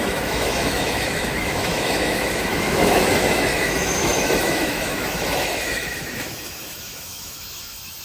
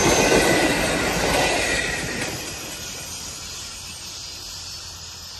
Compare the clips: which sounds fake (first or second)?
first